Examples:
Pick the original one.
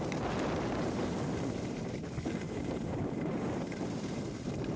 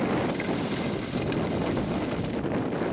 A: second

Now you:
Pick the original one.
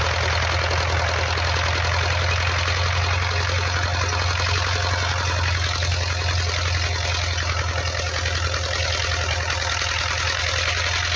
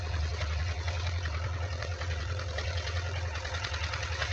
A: first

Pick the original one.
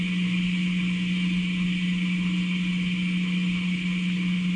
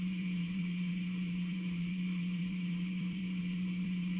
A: first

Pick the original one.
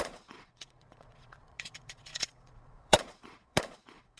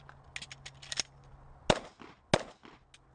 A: second